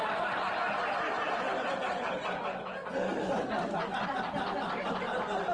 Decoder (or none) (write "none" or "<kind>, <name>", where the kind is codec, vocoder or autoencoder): none